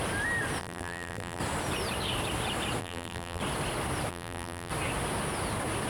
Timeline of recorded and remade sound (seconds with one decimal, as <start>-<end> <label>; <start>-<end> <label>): 0.0-0.6 recorded; 0.6-1.4 remade; 1.4-2.8 recorded; 2.8-3.4 remade; 3.4-4.1 recorded; 4.1-4.7 remade; 4.7-5.9 recorded

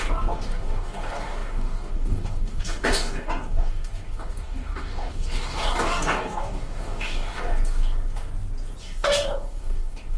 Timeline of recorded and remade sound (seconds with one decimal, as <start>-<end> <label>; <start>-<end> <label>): 0.0-8.3 remade; 8.3-8.8 recorded; 8.8-10.2 remade